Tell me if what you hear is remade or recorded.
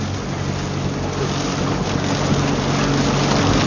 recorded